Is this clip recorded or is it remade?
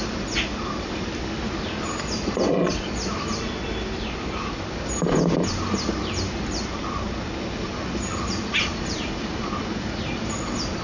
recorded